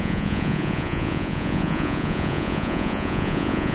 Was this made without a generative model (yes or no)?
no